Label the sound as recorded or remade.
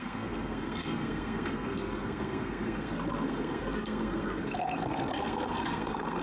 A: remade